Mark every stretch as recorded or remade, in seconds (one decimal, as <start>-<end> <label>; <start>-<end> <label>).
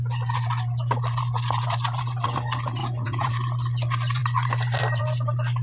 0.0-2.8 recorded; 2.8-3.3 remade; 3.3-5.6 recorded